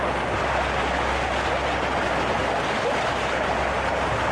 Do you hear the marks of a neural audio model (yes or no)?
no